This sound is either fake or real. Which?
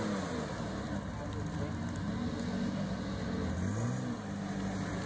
real